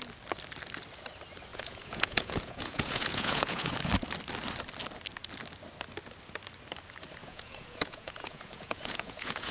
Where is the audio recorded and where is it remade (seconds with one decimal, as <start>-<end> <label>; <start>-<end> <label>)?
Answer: 0.0-1.5 recorded; 1.5-3.7 remade; 3.7-7.2 recorded; 7.2-9.5 remade